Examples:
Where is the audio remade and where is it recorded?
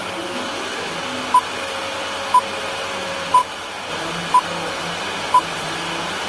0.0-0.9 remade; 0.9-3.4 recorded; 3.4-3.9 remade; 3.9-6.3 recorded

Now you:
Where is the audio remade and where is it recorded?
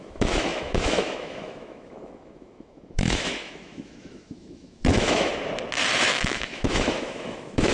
0.0-5.3 remade; 5.3-6.0 recorded; 6.0-7.7 remade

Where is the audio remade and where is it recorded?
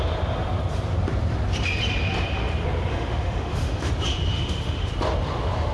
0.0-2.9 recorded; 2.9-3.9 remade; 3.9-4.3 recorded; 4.3-4.9 remade; 4.9-5.7 recorded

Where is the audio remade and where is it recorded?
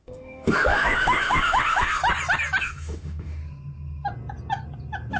0.0-2.0 remade; 2.0-2.6 recorded; 2.6-3.4 remade; 3.4-5.2 recorded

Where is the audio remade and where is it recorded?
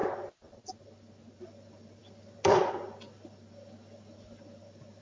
0.0-5.0 recorded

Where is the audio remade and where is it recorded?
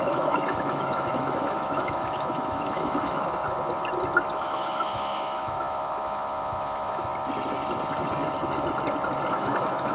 0.0-3.4 remade; 3.4-4.3 recorded; 4.3-7.1 remade; 7.1-9.3 recorded; 9.3-9.9 remade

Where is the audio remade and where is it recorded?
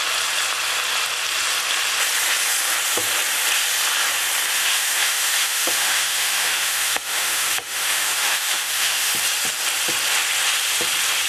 0.0-4.6 recorded; 4.6-9.1 remade; 9.1-11.3 recorded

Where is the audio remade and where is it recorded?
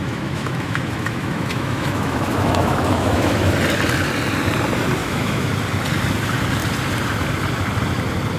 0.0-3.5 remade; 3.5-5.0 recorded; 5.0-5.5 remade; 5.5-8.4 recorded